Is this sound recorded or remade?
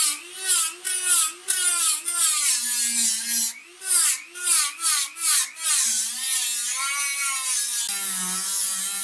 recorded